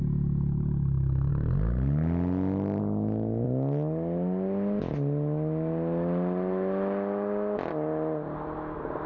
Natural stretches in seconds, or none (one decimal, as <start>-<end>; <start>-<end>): 0.0-9.1